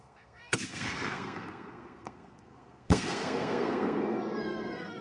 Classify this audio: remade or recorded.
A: remade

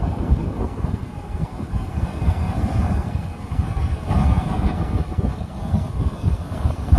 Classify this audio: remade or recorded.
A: remade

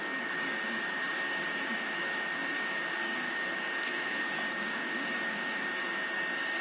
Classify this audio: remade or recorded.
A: remade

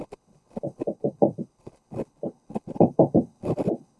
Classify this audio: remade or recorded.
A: remade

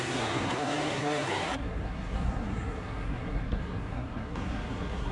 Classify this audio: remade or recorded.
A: remade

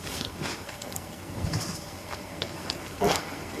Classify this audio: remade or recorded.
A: remade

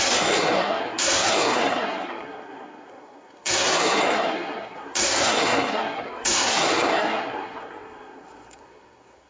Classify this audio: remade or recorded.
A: remade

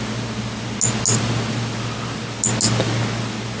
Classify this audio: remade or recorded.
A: recorded